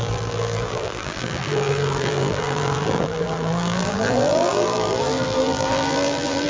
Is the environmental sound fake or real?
fake